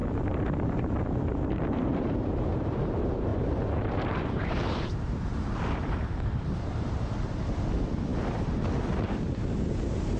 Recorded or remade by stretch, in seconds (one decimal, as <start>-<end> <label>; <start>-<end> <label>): 0.0-8.1 remade; 8.1-10.2 recorded